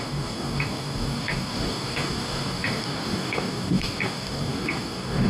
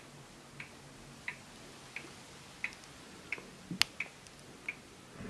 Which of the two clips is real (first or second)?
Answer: second